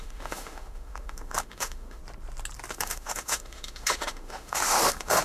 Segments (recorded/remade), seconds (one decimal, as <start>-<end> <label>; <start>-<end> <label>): 0.0-2.0 remade; 2.0-2.7 recorded; 2.7-5.2 remade